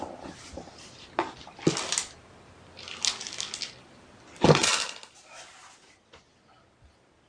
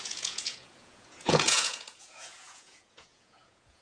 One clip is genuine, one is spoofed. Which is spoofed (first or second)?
second